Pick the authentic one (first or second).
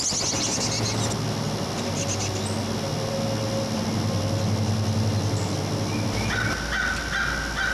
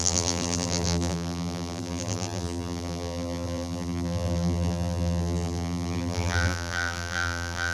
first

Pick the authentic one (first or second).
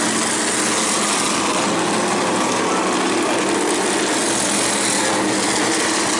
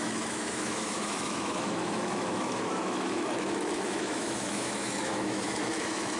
first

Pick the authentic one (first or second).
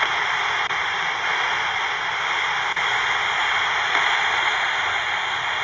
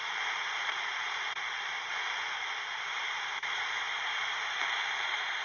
first